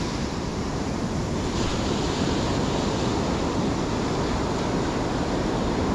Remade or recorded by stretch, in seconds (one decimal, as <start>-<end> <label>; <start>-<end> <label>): 0.0-5.9 recorded